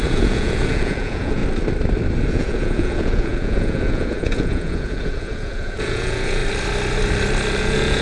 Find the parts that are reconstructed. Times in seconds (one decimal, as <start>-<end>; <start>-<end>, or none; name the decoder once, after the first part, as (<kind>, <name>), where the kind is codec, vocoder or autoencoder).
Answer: 0.0-1.4 (vocoder, Vocos); 2.3-6.4; 7.6-8.0